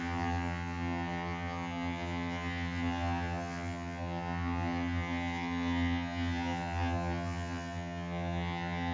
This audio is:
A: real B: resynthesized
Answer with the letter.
B